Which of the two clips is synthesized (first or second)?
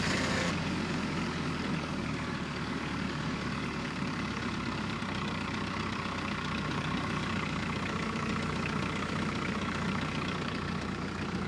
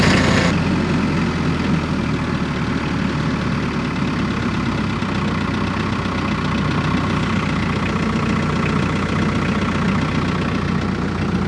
first